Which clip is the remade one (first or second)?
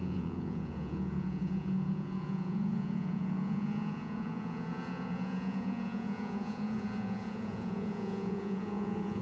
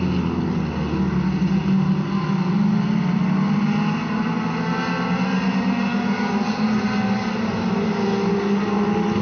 first